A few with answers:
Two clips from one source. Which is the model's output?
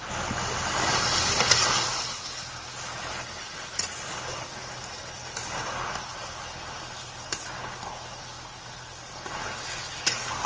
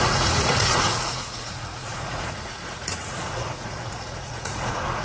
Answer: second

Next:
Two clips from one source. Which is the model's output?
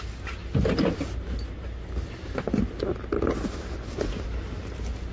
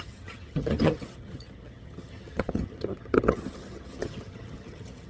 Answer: second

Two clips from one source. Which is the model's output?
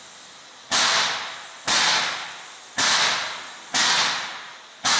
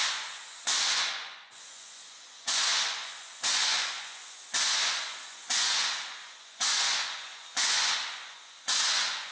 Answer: second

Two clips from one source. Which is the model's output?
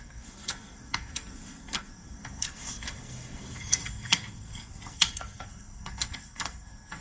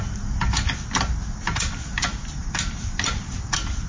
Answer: first